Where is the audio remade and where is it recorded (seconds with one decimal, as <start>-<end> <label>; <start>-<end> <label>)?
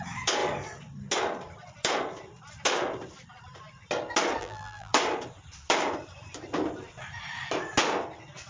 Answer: 0.0-4.4 recorded; 4.4-4.9 remade; 4.9-8.5 recorded